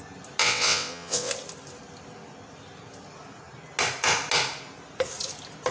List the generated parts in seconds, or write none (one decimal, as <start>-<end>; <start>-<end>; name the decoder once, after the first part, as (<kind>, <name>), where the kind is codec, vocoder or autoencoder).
0.4-1.3 (vocoder, WaveNeXt)